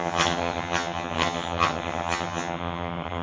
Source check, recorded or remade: remade